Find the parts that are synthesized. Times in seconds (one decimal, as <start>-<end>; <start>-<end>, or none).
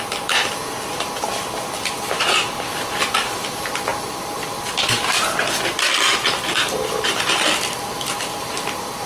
0.0-9.1